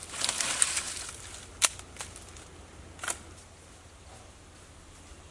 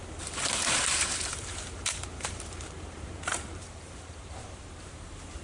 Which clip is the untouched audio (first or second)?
first